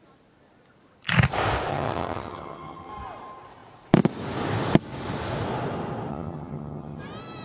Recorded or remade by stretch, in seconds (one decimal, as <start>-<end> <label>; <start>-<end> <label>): 0.0-1.7 recorded; 1.7-2.9 remade; 2.9-6.1 recorded; 6.1-7.0 remade; 7.0-7.4 recorded